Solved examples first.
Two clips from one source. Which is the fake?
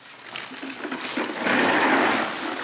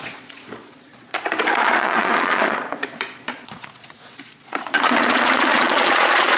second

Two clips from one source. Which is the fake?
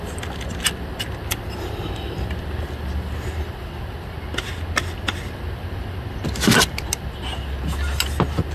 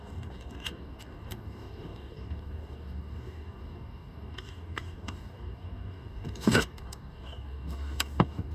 second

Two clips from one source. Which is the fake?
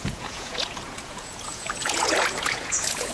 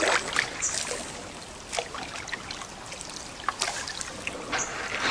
first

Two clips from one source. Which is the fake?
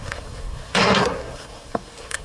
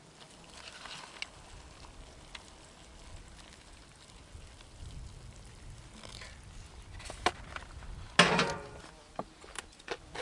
first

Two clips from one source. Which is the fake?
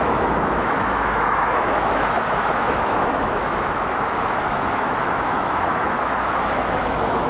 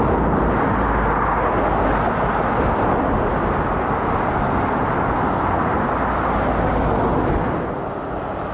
first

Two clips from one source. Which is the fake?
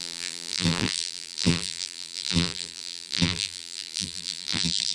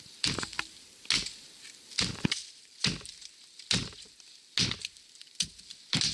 first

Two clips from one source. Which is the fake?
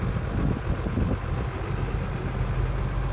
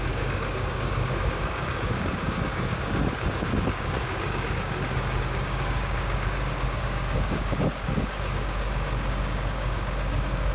second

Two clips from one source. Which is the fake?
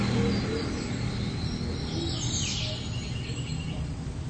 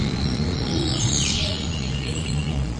second